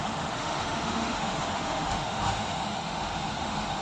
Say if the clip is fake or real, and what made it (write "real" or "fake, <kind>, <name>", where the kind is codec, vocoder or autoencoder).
fake, autoencoder, DAC-VAE